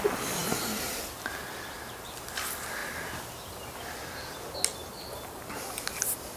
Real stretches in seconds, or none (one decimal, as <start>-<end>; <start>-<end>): 0.0-6.4